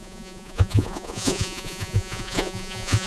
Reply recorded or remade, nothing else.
remade